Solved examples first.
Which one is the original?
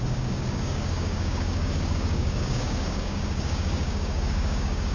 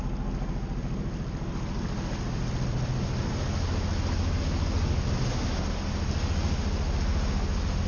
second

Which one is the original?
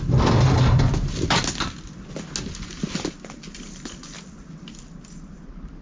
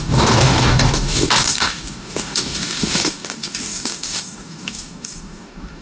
first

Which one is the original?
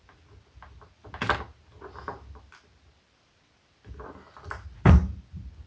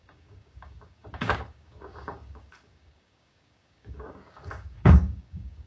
first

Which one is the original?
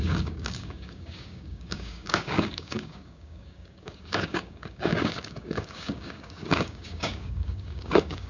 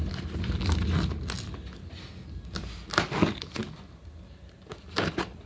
second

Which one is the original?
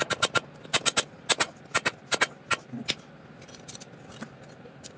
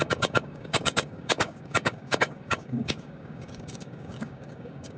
first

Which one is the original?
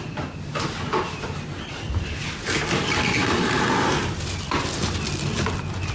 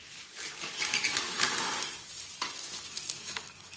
first